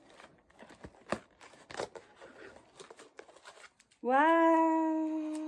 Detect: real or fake real